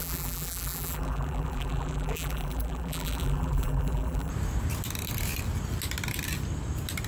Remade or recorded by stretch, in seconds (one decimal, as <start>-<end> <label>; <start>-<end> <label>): 0.0-4.3 remade; 4.3-7.1 recorded